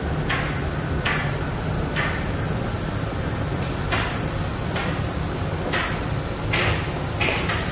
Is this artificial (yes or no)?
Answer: no